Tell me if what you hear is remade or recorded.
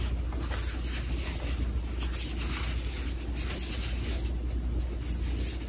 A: recorded